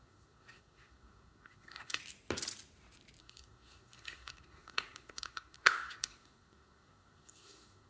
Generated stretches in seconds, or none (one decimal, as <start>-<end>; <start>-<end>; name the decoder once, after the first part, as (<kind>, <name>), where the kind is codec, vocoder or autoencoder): 0.0-2.0 (codec, SNAC); 3.2-7.9